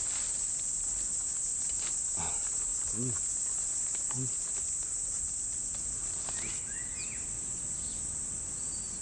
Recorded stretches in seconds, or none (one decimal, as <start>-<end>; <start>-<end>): 0.0-9.0